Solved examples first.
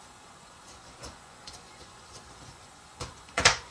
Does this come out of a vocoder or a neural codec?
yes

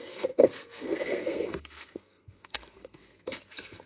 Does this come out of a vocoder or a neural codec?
yes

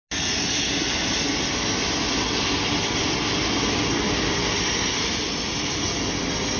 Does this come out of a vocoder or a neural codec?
no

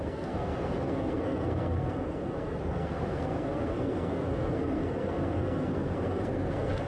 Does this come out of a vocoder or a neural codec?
yes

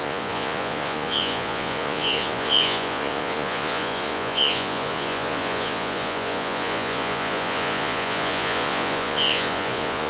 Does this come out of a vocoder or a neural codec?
yes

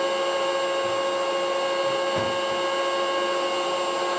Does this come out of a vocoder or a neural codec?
no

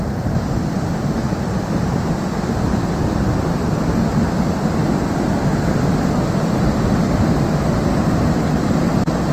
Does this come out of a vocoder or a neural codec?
no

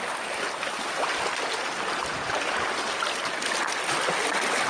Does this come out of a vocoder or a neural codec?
no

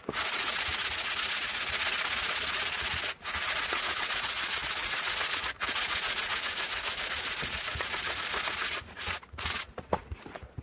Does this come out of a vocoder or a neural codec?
yes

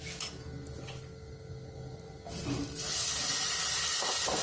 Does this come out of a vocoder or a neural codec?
no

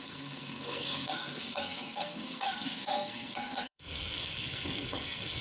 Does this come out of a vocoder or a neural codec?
yes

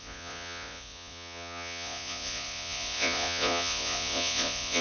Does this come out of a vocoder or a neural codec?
yes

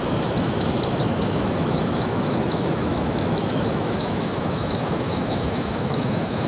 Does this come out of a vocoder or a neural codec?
yes